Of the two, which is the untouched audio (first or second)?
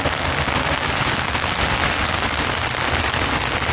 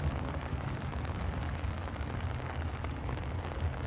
first